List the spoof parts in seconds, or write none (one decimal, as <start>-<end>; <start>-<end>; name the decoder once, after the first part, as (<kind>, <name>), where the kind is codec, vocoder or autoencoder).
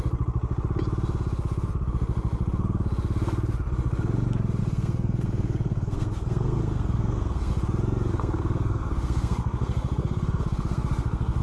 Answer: 4.6-7.5 (codec, SNAC); 8.1-11.4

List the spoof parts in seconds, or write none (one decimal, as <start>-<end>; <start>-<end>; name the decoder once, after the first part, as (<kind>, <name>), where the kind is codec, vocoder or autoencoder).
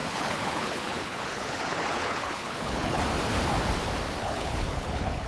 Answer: 0.0-3.0 (codec, HILCodec); 4.2-5.3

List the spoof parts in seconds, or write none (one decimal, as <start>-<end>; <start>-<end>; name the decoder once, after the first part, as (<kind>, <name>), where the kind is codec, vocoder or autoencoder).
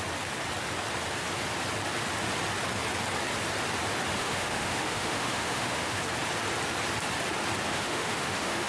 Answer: 4.2-6.0 (autoencoder, DAC-VAE); 7.7-8.7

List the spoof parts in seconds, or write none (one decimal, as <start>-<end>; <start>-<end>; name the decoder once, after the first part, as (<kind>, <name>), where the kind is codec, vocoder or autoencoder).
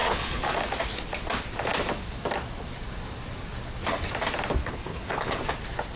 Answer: 0.0-0.5 (codec, HILCodec); 4.6-5.4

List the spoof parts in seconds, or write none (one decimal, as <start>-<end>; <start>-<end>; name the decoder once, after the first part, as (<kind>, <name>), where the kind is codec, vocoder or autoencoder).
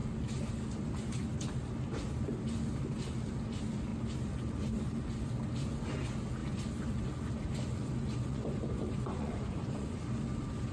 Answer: 7.7-10.0 (vocoder, Vocos)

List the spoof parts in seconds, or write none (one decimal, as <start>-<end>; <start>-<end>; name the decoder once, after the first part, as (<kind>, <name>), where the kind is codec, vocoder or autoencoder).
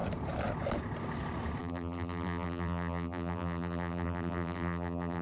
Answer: 1.6-5.2 (vocoder, BigVGAN v2)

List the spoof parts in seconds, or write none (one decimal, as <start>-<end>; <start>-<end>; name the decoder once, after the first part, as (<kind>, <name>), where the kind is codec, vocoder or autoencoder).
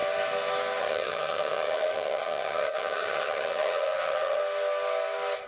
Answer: 0.8-4.4 (vocoder, HiFi-GAN)